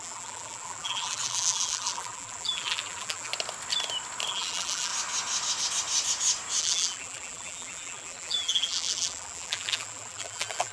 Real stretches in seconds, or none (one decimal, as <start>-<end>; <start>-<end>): 3.3-4.3; 4.9-6.6